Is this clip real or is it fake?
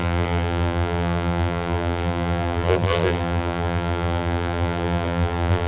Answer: fake